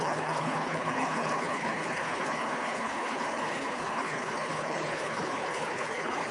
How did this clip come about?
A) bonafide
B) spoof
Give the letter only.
B